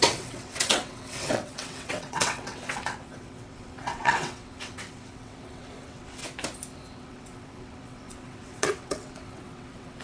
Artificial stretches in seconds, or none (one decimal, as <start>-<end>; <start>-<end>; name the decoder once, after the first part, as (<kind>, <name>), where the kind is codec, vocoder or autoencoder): 0.0-6.2 (vocoder, WaveNeXt); 7.0-10.0